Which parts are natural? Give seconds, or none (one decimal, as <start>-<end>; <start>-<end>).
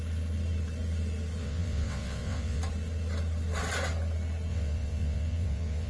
0.0-1.4; 2.6-4.5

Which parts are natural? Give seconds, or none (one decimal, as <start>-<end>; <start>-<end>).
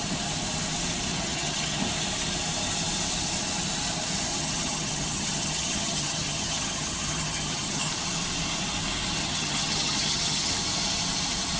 0.0-1.1; 1.8-4.3; 7.9-9.2; 10.5-11.6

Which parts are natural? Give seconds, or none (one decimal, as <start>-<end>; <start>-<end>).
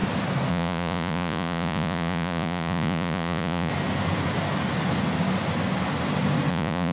0.0-0.5; 3.7-6.5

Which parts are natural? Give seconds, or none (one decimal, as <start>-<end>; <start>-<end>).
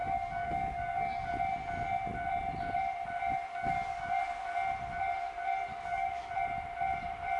1.3-3.5; 4.2-5.7; 6.3-7.4